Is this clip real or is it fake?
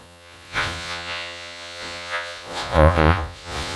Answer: fake